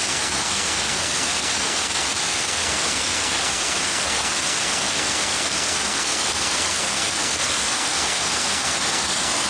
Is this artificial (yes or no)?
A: yes